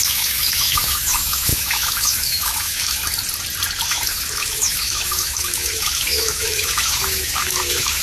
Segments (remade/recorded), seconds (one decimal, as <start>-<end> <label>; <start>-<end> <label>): 0.0-3.0 remade; 3.0-3.9 recorded; 3.9-8.0 remade